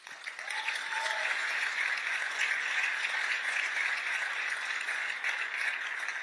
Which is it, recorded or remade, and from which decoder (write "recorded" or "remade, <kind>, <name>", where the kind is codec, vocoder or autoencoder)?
remade, vocoder, Vocos